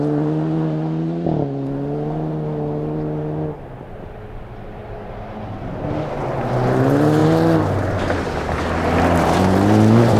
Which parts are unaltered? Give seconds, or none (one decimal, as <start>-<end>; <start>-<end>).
0.0-10.2